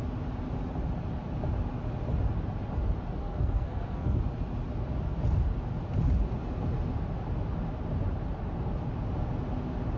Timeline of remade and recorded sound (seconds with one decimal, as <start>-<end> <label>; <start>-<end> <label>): 0.0-3.2 recorded; 3.2-4.2 remade; 4.2-10.0 recorded